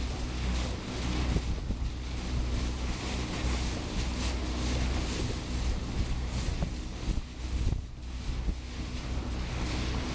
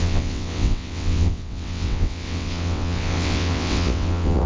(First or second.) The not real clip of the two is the second